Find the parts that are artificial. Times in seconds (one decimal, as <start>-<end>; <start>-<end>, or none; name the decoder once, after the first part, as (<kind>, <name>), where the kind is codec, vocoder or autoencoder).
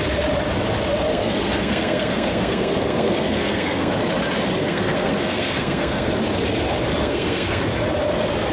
1.1-3.9 (codec, SNAC); 4.6-6.1; 7.0-7.6